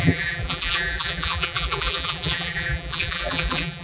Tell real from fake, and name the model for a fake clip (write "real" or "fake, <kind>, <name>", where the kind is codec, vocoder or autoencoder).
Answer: fake, vocoder, BigVGAN v2